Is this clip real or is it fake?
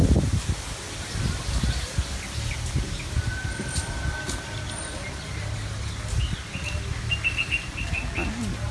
real